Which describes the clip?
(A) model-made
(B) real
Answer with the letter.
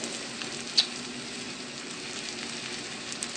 B